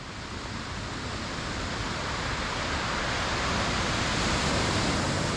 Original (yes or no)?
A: yes